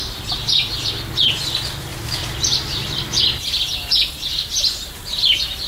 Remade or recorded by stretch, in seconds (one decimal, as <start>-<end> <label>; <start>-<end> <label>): 0.0-1.9 recorded; 1.9-3.2 remade; 3.2-5.7 recorded